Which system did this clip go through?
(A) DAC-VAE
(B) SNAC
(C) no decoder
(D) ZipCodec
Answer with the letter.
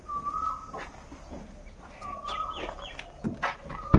C